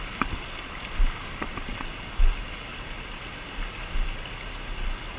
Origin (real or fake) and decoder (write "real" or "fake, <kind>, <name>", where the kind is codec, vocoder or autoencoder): real